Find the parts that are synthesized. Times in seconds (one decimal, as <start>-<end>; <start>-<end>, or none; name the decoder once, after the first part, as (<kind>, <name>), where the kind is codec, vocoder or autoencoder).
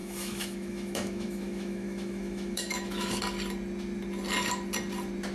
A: 0.0-3.2 (autoencoder, DAC-VAE)